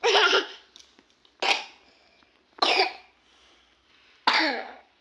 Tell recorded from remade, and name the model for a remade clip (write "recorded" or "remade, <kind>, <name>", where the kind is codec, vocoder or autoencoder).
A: recorded